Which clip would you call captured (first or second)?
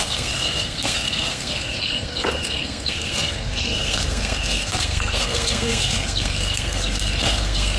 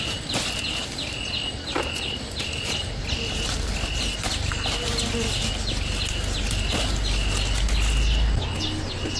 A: second